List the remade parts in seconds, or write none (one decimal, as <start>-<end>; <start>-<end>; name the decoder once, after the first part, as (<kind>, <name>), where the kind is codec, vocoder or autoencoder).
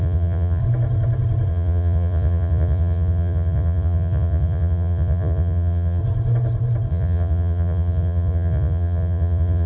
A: 0.0-0.6 (vocoder, Vocos); 1.5-6.0; 6.9-9.7